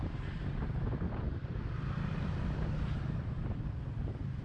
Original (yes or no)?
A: no